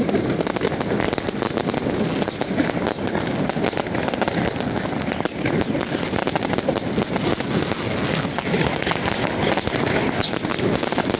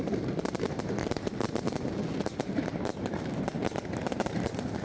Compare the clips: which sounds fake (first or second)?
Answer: second